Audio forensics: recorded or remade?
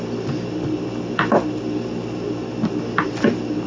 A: recorded